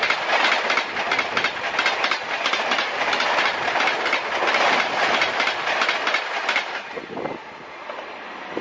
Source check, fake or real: real